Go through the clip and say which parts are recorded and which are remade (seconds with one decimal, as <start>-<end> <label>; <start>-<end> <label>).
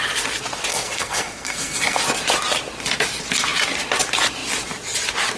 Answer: 0.0-0.7 recorded; 0.7-2.0 remade; 2.0-5.4 recorded